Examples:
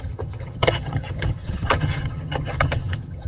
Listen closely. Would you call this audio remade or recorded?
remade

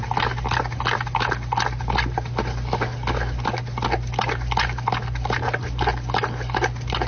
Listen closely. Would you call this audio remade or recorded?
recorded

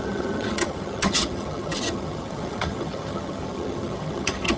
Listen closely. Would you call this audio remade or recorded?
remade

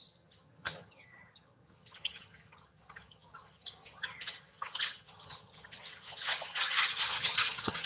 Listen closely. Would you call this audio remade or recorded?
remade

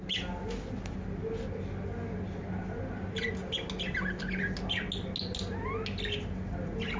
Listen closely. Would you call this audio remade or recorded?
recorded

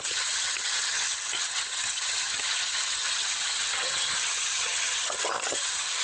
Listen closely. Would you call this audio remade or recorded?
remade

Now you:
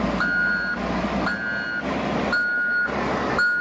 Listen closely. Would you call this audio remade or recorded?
recorded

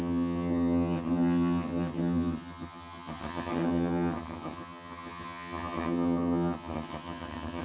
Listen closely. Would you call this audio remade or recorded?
remade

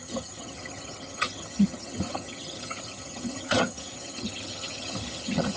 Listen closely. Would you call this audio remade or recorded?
remade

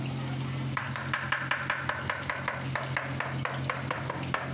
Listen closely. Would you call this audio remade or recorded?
recorded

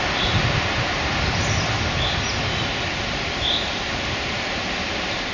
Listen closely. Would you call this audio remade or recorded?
recorded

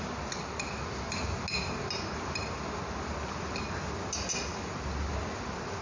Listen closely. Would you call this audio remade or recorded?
recorded